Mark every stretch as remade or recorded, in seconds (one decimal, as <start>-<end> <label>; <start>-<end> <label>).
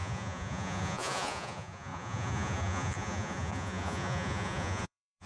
0.0-5.3 remade